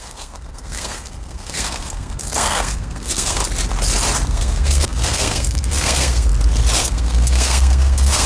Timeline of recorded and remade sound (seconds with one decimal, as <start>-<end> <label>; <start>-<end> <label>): 0.0-3.4 remade; 3.4-4.3 recorded; 4.3-6.3 remade; 6.3-6.8 recorded; 6.8-8.3 remade